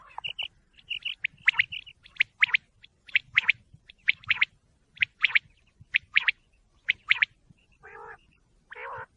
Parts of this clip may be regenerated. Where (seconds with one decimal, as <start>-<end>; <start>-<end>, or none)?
2.9-4.5; 5.0-8.4